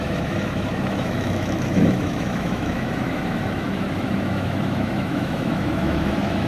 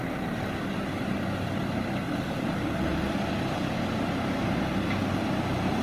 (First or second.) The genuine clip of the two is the second